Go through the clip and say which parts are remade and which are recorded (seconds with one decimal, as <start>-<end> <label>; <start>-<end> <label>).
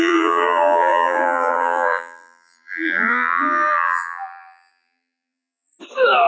0.0-5.7 remade; 5.7-6.3 recorded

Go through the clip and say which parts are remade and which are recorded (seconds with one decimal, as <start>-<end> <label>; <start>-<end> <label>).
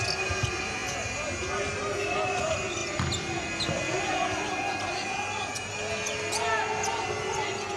0.0-7.8 recorded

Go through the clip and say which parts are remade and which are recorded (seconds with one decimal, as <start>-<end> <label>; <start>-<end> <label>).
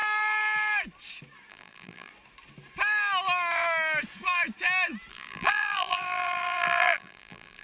0.0-1.5 recorded; 1.5-2.1 remade; 2.1-5.1 recorded; 5.1-7.6 remade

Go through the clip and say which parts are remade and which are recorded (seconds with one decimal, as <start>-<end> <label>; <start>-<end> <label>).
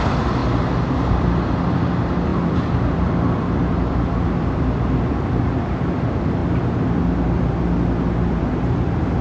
0.0-0.4 remade; 0.4-1.1 recorded; 1.1-6.4 remade; 6.4-7.4 recorded; 7.4-9.2 remade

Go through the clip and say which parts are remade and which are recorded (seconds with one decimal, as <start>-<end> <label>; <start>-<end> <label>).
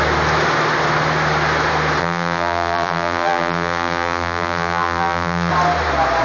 0.0-2.0 recorded; 2.0-5.5 remade; 5.5-6.2 recorded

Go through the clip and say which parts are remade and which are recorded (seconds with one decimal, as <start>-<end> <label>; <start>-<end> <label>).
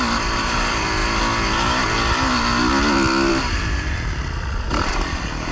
0.0-1.0 remade; 1.0-3.3 recorded; 3.3-5.5 remade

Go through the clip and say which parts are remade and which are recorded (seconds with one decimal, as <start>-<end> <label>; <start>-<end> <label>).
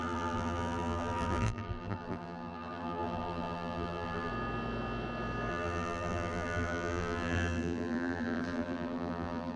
0.0-4.3 remade; 4.3-5.5 recorded; 5.5-9.6 remade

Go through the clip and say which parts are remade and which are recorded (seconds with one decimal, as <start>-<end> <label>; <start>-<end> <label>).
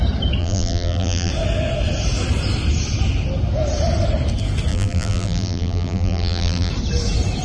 0.0-0.4 recorded; 0.4-1.3 remade; 1.3-4.7 recorded; 4.7-6.7 remade; 6.7-7.4 recorded